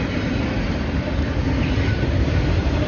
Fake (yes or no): yes